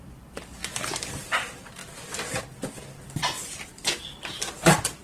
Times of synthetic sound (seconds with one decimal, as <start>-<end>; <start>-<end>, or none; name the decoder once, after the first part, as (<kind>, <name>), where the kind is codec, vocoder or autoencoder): none